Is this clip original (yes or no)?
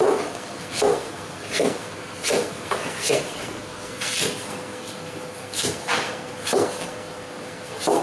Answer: no